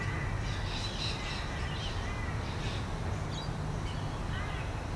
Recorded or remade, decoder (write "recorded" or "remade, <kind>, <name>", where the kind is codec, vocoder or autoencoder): recorded